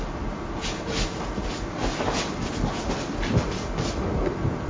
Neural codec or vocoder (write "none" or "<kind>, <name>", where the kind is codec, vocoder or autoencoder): none